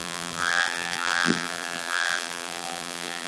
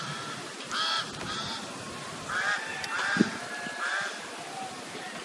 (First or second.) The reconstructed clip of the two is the first